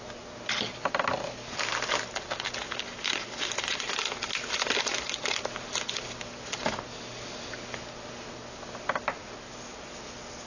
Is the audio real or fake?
real